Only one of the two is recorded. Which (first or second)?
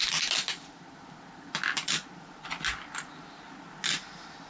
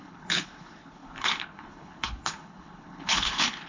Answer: first